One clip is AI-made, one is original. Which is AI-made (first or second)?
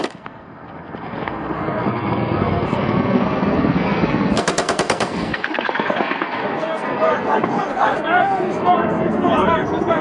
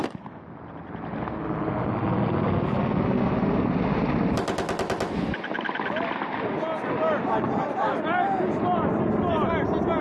first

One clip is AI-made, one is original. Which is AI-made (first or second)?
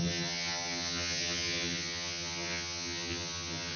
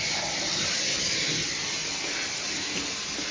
first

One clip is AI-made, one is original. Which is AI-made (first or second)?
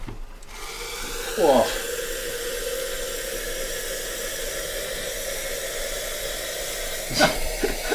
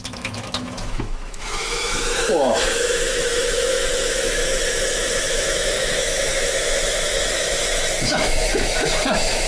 second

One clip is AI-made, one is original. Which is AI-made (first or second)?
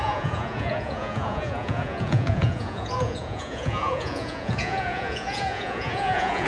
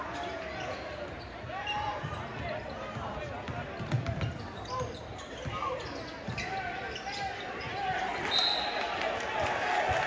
first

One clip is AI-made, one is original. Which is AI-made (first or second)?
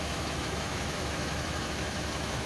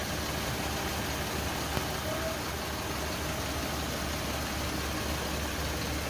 first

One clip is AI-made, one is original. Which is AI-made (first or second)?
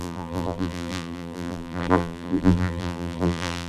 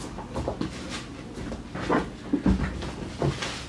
first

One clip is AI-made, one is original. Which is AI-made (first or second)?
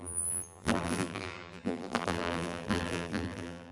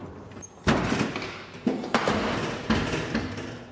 first